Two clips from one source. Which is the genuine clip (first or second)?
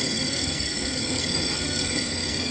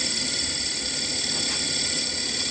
second